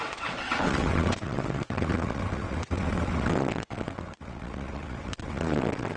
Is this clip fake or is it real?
fake